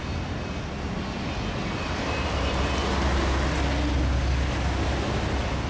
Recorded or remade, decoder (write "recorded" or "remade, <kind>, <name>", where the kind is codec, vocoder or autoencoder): recorded